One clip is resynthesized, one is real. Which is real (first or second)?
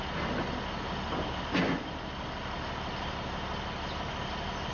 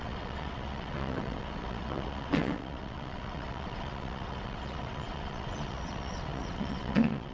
first